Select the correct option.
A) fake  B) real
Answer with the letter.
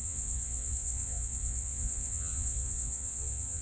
A